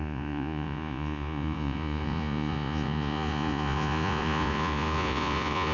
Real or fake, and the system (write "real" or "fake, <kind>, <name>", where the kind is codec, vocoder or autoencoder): fake, vocoder, Vocos